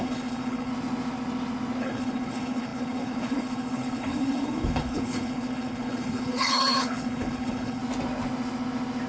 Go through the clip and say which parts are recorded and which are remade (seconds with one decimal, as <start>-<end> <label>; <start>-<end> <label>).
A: 0.0-0.7 remade; 0.7-1.8 recorded; 1.8-7.8 remade; 7.8-9.1 recorded

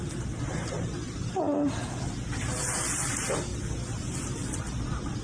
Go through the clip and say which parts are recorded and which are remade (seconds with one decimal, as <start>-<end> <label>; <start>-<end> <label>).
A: 0.0-5.2 recorded

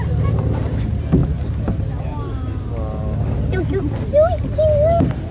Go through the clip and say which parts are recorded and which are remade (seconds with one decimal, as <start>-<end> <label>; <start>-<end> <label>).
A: 0.0-5.3 recorded

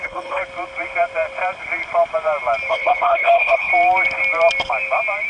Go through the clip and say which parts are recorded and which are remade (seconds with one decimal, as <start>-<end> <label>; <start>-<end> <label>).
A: 0.0-0.4 remade; 0.4-2.7 recorded; 2.7-3.7 remade; 3.7-5.3 recorded

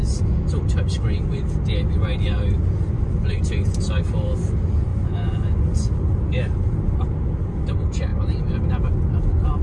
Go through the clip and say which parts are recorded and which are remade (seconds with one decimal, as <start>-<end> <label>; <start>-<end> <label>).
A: 0.0-9.6 recorded